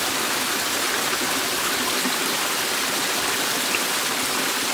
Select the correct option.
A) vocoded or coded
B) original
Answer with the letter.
B